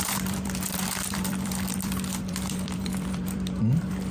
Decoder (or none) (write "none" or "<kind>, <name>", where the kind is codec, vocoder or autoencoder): vocoder, BigVGAN v2